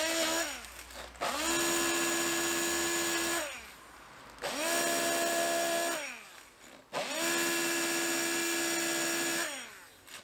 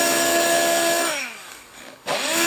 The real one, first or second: first